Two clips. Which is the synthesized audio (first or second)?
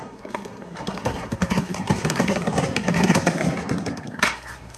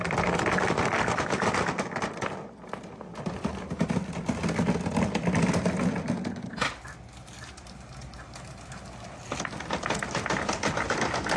first